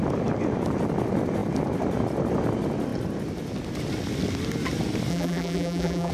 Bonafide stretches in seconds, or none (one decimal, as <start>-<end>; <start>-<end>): 0.0-5.1